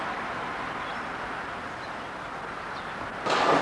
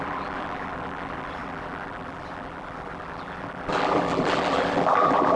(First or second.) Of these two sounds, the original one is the first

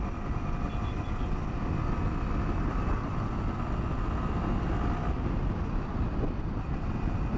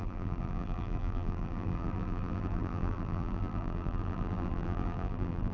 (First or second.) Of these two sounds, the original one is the first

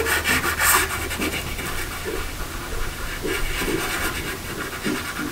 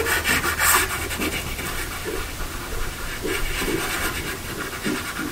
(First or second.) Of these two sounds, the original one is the first